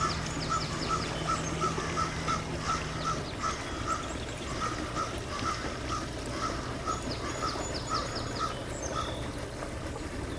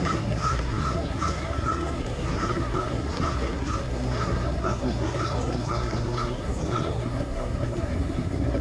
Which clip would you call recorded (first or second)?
first